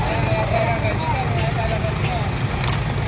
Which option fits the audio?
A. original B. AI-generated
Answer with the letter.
A